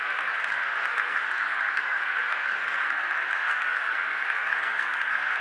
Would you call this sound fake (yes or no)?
yes